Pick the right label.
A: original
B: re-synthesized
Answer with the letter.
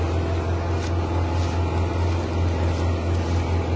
A